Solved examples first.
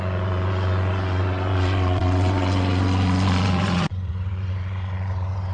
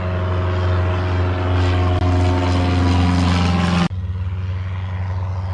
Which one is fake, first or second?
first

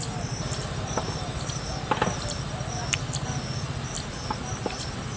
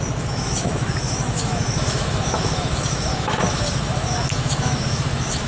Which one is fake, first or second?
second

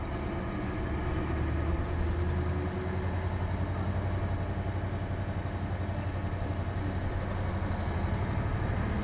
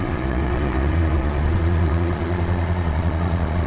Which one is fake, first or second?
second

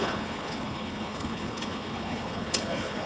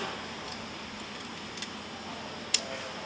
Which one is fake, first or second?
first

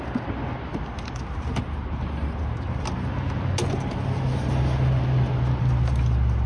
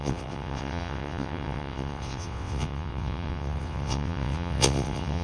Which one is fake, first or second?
second